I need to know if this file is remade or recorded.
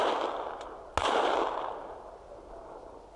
recorded